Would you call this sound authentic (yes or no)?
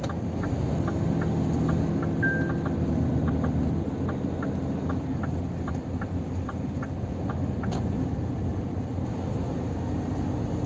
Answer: yes